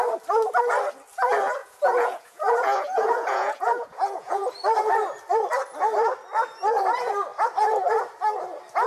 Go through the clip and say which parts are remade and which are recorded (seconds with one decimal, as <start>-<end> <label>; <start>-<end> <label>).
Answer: 0.0-1.6 recorded; 1.6-4.5 remade; 4.5-8.9 recorded